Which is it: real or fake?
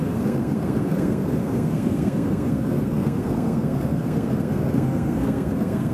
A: fake